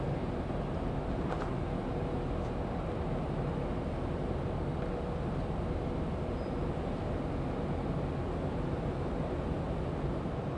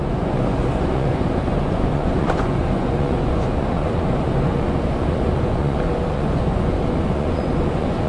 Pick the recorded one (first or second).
first